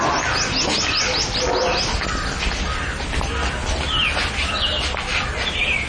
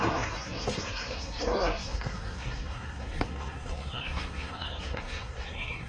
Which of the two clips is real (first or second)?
first